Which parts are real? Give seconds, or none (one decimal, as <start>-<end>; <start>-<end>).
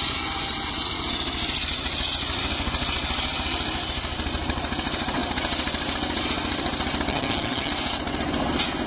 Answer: 0.0-7.1; 7.7-8.9